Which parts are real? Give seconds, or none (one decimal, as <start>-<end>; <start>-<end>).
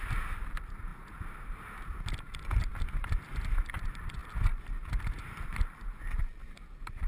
none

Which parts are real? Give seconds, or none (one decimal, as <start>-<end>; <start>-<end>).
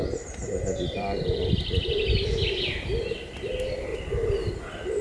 none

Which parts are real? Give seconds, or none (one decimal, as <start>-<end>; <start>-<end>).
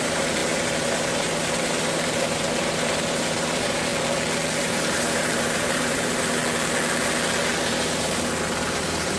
3.9-4.6; 6.4-7.6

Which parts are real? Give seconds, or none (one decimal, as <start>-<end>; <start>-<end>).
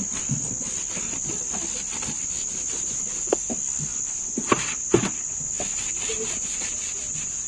0.0-7.5